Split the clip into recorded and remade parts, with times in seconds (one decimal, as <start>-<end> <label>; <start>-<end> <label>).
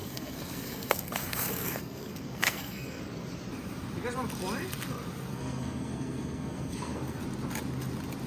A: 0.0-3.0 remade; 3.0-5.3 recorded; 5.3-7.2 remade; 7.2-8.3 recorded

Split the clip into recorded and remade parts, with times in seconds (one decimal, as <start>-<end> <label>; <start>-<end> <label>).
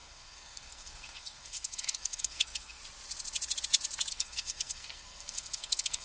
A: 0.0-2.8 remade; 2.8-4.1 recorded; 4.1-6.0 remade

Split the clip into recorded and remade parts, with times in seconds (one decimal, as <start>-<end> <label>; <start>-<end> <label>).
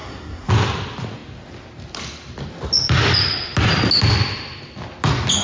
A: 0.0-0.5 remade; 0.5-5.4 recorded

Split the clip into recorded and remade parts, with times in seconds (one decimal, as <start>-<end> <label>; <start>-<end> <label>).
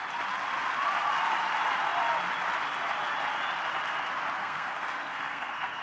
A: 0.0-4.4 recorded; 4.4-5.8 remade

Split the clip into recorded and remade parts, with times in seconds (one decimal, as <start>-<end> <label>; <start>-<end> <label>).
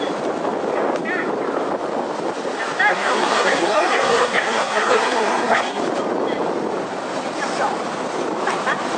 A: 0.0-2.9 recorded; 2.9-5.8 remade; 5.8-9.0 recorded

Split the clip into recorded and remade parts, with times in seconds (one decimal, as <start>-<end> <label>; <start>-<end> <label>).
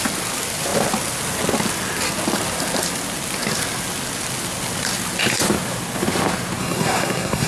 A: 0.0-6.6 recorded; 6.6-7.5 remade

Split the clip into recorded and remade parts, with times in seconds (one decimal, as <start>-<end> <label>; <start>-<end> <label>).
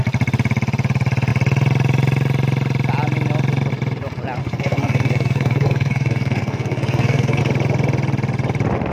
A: 0.0-4.4 recorded; 4.4-7.4 remade; 7.4-8.9 recorded